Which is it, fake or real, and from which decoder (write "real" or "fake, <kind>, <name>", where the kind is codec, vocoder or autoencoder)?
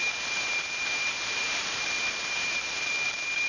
fake, vocoder, BigVGAN v2